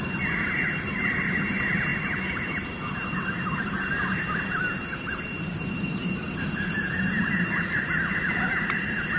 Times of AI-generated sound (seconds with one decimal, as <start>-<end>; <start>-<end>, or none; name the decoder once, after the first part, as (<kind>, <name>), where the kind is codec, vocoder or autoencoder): 0.0-1.9 (vocoder, BigVGAN v2); 3.4-9.2